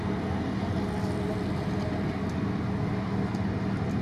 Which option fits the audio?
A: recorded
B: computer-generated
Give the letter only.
A